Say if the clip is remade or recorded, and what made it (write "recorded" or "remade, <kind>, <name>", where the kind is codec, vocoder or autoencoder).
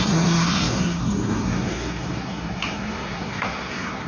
remade, codec, SNAC